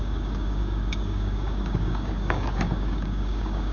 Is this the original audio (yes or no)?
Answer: no